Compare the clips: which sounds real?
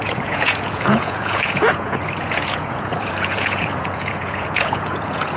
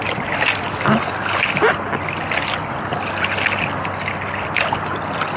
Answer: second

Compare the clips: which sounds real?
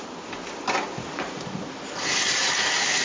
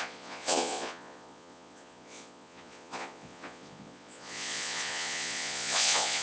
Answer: first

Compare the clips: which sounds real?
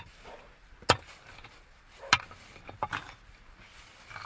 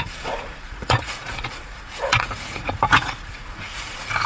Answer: first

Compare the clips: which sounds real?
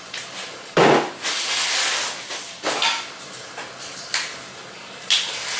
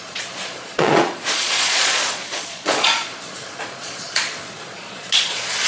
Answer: first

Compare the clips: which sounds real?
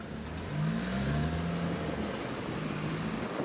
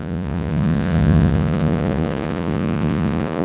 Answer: first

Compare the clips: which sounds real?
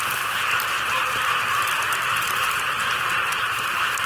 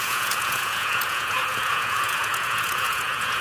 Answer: first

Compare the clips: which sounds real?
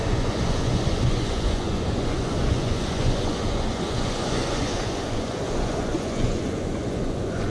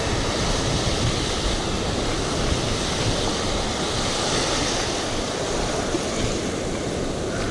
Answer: second